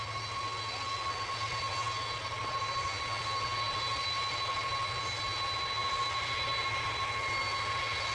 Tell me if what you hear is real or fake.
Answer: real